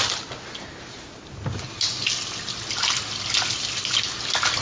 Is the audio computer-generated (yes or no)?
no